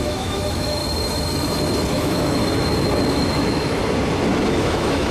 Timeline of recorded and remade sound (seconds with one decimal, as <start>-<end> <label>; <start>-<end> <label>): 0.0-0.8 remade; 0.8-1.9 recorded; 1.9-2.4 remade; 2.4-3.1 recorded; 3.1-3.8 remade; 3.8-4.5 recorded; 4.5-5.1 remade